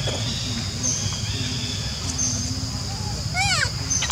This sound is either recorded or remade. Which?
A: recorded